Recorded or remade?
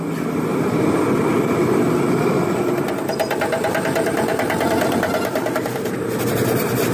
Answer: recorded